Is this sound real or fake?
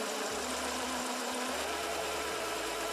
real